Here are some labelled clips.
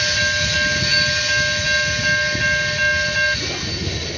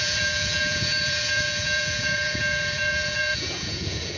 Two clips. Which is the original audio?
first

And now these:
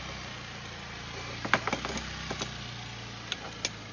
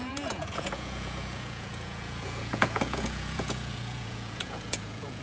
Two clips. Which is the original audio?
first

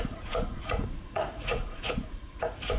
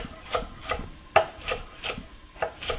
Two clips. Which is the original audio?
second